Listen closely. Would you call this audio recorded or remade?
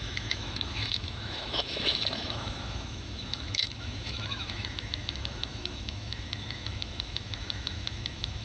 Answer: remade